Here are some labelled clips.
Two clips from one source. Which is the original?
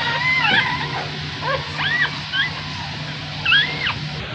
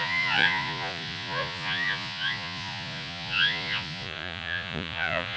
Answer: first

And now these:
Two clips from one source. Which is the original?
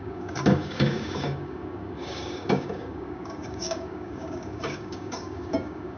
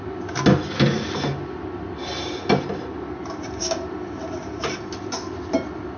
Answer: second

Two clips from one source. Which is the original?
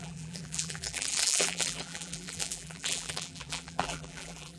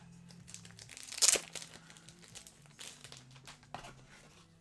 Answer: second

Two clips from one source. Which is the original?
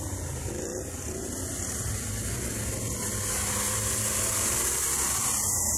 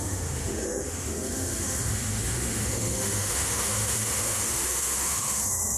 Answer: first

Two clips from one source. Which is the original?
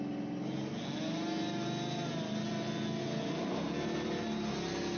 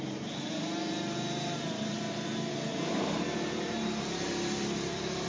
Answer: first